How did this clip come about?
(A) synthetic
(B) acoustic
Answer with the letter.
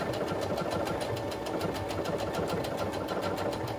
B